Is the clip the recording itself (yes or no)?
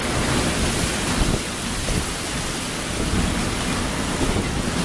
yes